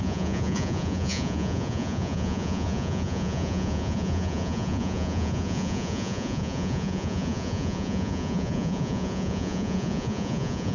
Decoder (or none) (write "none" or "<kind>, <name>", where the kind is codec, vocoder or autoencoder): vocoder, Vocos